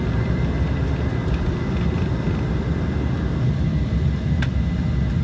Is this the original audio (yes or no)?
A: yes